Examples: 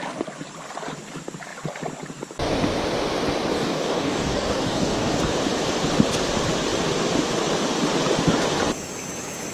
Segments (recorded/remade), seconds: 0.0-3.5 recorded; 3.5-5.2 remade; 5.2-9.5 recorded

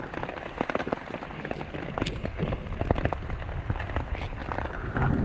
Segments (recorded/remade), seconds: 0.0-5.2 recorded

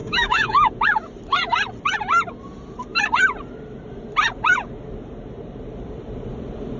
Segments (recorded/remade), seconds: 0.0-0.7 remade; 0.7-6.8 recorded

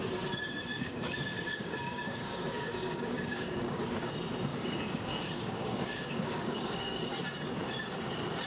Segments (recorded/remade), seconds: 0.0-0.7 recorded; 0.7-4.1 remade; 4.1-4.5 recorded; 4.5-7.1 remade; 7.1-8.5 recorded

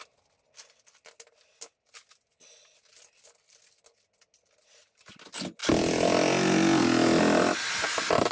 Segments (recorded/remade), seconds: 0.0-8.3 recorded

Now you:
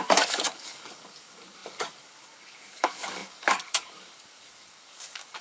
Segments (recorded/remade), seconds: 0.0-5.4 remade

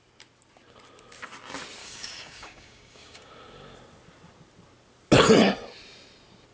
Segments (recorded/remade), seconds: 0.0-1.8 recorded; 1.8-3.3 remade; 3.3-6.5 recorded